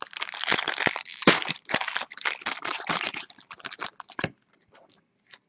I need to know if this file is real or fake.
fake